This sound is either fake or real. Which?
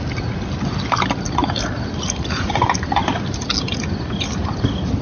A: real